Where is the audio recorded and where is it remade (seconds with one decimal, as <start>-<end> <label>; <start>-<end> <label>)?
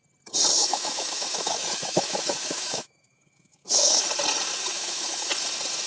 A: 0.0-0.5 recorded; 0.5-4.0 remade; 4.0-4.7 recorded; 4.7-5.3 remade; 5.3-5.9 recorded